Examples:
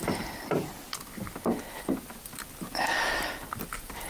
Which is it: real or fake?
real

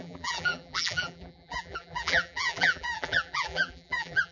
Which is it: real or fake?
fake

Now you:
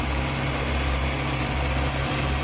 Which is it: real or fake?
fake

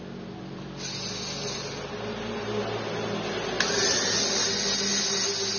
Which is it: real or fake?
real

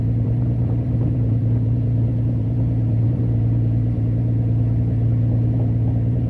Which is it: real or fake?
fake